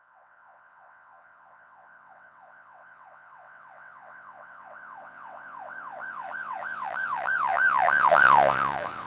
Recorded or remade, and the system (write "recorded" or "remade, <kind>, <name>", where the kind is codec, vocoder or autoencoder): remade, vocoder, WaveNeXt